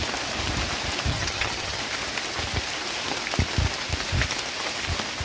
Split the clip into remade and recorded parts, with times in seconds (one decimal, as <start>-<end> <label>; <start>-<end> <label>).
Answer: 0.0-1.1 recorded; 1.1-1.8 remade; 1.8-5.2 recorded